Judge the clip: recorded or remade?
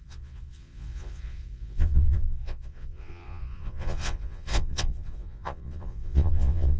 remade